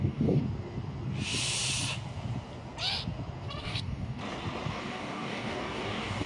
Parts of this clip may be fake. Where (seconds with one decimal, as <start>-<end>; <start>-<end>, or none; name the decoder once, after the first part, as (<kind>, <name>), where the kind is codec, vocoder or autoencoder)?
0.0-0.4 (codec, DAC); 3.6-4.2; 4.7-6.3